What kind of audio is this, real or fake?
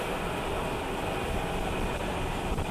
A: fake